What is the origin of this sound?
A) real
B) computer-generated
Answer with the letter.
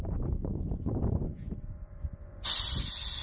B